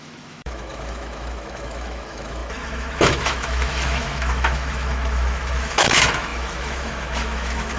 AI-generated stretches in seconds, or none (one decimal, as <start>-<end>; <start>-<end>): 0.0-7.8